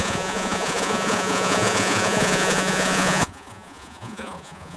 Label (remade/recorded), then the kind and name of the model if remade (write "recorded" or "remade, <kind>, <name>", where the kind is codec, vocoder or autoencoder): remade, vocoder, Vocos